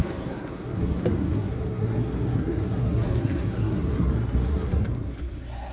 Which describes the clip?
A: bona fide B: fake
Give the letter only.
B